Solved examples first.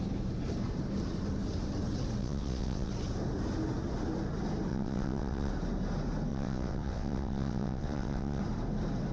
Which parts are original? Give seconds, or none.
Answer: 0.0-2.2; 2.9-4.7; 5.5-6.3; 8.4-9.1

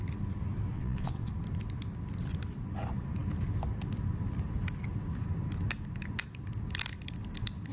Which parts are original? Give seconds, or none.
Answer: 0.0-0.7; 1.3-7.7

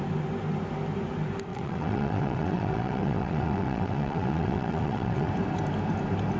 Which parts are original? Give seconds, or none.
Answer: 0.0-1.5; 5.3-6.4

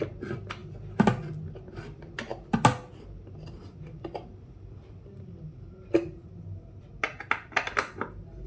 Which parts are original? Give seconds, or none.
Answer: 0.0-8.5

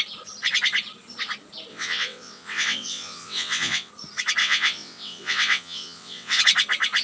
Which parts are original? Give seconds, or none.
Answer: 0.0-1.7; 3.9-4.4; 6.4-7.0